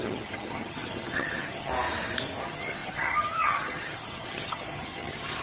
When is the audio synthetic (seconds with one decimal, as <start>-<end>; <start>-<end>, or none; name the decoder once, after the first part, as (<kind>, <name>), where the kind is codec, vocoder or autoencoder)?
0.0-1.7 (vocoder, HiFi-GAN); 2.4-5.4